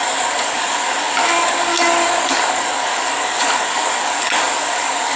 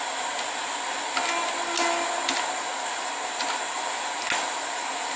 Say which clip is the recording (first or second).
second